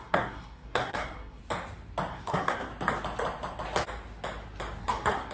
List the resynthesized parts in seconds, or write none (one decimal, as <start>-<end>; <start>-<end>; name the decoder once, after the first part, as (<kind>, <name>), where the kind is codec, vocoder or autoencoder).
0.0-1.4 (codec, SNAC); 2.1-2.7; 4.8-5.3